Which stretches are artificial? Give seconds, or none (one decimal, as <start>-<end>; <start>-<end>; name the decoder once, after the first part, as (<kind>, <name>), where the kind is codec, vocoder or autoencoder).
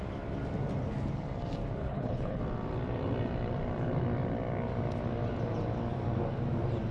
1.8-2.4 (codec, HILCodec)